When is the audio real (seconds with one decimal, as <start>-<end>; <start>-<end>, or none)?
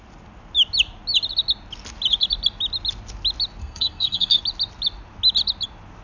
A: 0.0-3.6; 4.4-6.0